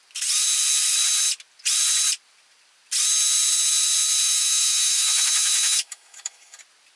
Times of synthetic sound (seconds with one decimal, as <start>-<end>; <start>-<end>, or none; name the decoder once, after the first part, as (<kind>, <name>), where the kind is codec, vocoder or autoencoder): 4.2-6.6 (autoencoder, DAC-VAE)